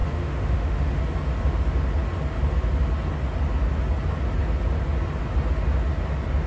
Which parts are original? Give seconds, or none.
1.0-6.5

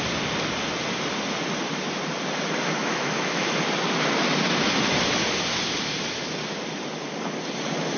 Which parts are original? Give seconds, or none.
0.0-2.8; 3.5-8.0

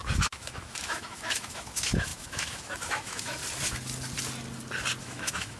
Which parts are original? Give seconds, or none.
3.4-5.0

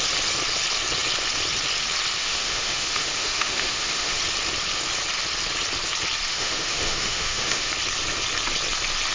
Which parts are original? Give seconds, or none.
0.0-2.2; 4.2-6.3; 7.7-9.1